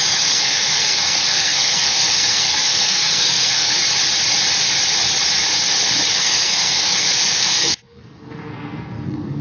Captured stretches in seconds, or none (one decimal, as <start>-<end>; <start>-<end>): 3.8-6.1